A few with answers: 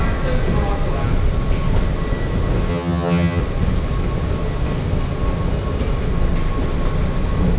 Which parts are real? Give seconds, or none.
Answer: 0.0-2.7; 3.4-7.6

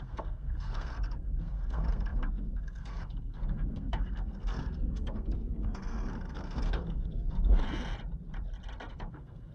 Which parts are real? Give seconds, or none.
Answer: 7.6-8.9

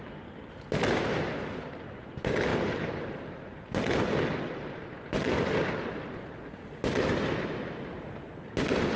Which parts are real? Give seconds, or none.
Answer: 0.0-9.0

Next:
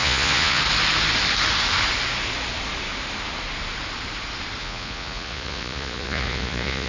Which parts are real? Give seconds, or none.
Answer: 0.6-4.6

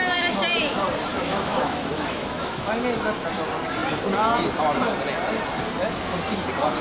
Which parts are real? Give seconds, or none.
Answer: 0.0-1.1; 2.7-6.8

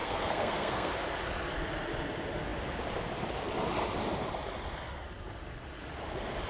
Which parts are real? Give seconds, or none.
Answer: 0.9-6.5

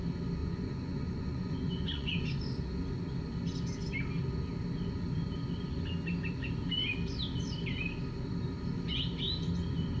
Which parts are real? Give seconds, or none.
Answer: 0.0-0.4; 2.4-10.0

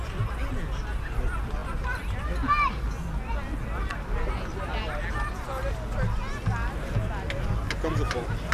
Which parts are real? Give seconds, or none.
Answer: 0.0-8.5